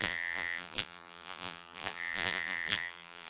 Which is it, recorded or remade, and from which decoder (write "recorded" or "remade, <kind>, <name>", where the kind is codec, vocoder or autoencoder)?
remade, vocoder, BigVGAN v2